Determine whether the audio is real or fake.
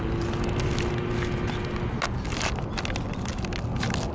real